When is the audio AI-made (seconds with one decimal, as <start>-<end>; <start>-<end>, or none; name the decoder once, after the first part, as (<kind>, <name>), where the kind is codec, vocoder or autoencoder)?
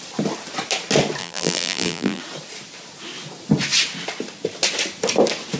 1.2-2.2 (vocoder, BigVGAN v2)